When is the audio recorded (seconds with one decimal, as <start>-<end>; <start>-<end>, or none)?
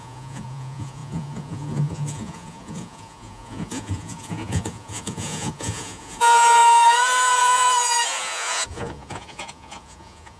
none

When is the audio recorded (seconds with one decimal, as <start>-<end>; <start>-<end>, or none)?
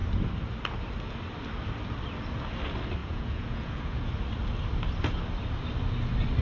0.0-3.0; 4.1-6.4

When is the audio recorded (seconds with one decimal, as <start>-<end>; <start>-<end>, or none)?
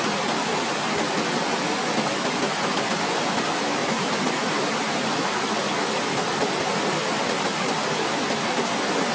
0.0-3.8; 5.2-9.1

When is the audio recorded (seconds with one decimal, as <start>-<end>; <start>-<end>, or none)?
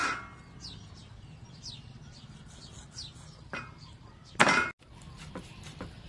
0.0-6.1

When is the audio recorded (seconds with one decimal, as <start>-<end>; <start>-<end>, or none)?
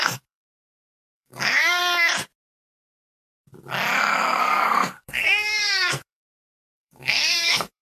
1.8-4.0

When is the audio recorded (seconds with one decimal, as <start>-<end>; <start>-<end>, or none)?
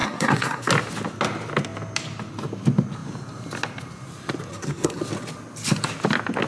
0.7-4.5; 5.0-6.5